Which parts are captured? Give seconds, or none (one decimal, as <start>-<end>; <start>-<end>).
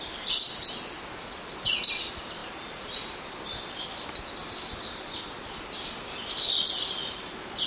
0.0-2.4; 2.9-7.7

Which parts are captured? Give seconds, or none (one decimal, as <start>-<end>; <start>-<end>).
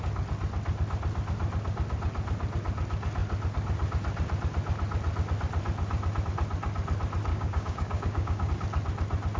0.0-7.3; 8.5-9.4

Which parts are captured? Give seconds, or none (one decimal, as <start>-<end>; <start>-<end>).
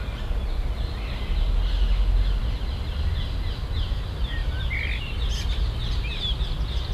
0.0-2.4; 3.2-4.4; 5.3-6.9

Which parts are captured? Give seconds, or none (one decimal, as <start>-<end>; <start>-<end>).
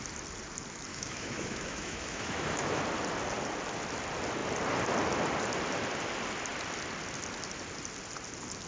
0.0-0.9; 2.8-8.7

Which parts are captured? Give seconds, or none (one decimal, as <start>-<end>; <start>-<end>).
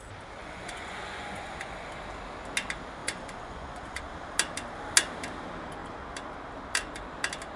0.0-0.4; 1.9-3.0; 4.0-7.6